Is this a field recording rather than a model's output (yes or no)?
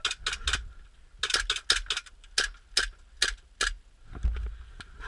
yes